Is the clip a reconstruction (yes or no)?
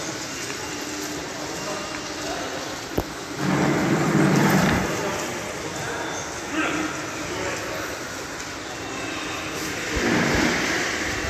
no